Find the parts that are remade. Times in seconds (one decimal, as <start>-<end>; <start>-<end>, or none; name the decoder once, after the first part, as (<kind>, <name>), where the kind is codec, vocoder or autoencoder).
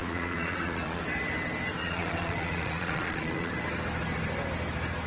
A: 0.0-1.0 (vocoder, Vocos); 1.8-3.5